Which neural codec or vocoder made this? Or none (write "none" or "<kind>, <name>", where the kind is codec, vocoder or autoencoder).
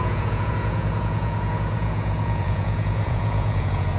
vocoder, Vocos